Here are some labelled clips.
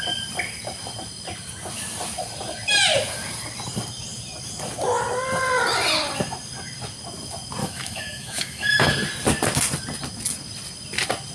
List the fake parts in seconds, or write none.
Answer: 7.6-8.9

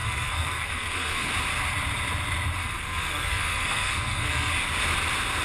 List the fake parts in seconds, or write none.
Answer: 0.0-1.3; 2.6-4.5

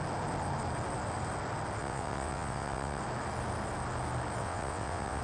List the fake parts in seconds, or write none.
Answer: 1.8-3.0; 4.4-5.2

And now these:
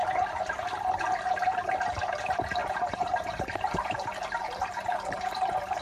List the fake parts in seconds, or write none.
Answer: 2.6-5.8

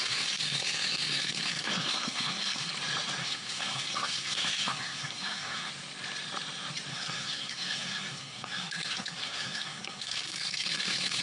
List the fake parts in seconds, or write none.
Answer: 0.0-2.7; 3.2-5.7; 6.9-11.2

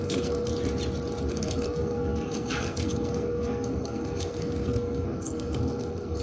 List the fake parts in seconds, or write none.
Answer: 0.0-0.5; 1.3-6.2

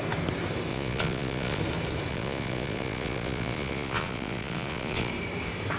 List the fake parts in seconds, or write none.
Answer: 0.7-1.6; 2.1-5.1